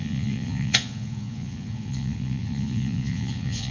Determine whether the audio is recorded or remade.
remade